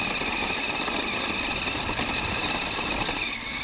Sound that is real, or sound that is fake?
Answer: real